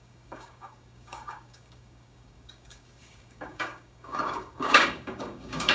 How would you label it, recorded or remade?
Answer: remade